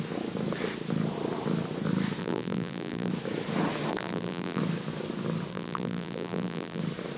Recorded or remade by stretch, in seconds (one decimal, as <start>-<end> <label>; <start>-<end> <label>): 0.0-2.2 recorded; 2.2-3.1 remade; 3.1-3.9 recorded; 3.9-4.6 remade; 4.6-5.5 recorded; 5.5-6.8 remade; 6.8-7.2 recorded